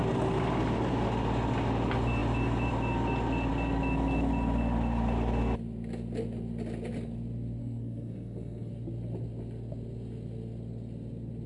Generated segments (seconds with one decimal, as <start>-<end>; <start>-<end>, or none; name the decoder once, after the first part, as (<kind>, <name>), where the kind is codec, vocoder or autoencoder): 7.6-8.7 (codec, SNAC)